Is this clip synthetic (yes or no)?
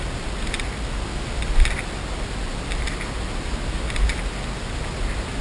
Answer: no